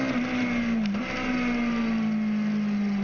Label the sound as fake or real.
real